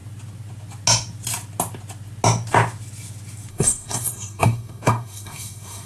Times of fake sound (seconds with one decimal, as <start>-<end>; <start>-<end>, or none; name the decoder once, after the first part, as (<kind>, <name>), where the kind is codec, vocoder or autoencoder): 3.5-5.9 (codec, SNAC)